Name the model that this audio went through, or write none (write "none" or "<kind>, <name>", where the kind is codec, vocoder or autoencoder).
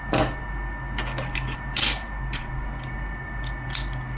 none